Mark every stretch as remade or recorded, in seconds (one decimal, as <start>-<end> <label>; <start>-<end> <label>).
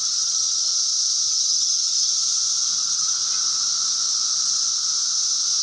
0.0-0.7 remade; 0.7-1.3 recorded; 1.3-2.1 remade; 2.1-2.8 recorded; 2.8-3.2 remade; 3.2-5.6 recorded